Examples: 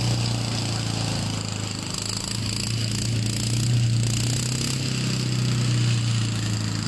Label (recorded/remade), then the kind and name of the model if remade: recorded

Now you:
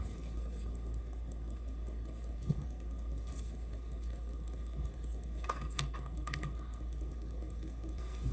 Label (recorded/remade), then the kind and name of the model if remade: remade, codec, SNAC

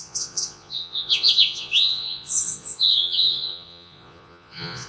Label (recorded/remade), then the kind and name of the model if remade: remade, vocoder, Vocos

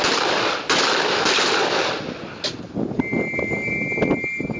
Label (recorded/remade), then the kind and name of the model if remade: recorded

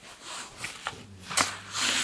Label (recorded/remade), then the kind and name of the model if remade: recorded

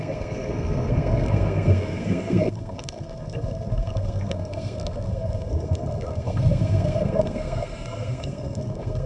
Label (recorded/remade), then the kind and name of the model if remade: remade, codec, SNAC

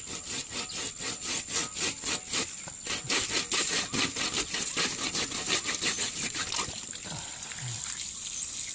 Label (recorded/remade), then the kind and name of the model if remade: recorded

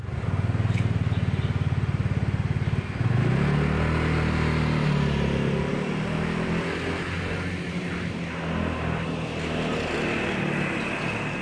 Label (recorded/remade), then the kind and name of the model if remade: recorded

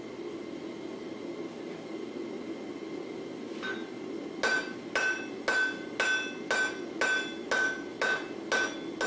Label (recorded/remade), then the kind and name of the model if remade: recorded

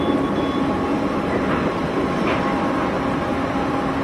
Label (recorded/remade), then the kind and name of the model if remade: recorded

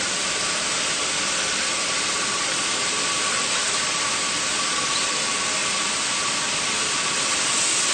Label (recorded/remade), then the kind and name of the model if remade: remade, vocoder, BigVGAN v2